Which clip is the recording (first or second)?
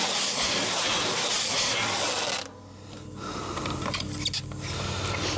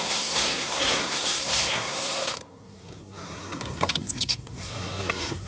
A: first